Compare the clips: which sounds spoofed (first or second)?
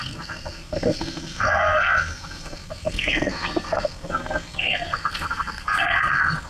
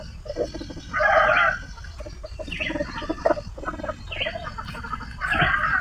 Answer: first